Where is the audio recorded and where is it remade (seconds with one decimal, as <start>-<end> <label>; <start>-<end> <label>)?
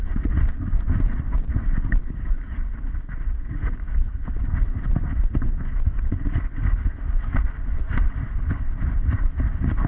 0.0-9.9 recorded